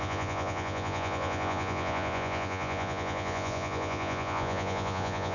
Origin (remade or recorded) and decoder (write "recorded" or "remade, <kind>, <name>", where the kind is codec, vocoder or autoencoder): remade, vocoder, Vocos